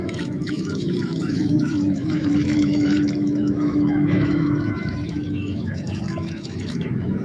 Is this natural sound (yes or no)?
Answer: no